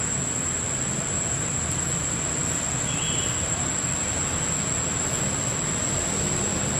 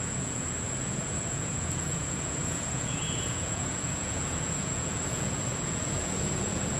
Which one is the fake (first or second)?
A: second